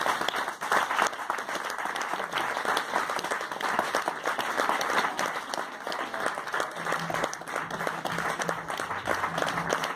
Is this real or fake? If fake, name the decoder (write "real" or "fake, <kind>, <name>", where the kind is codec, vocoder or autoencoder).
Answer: real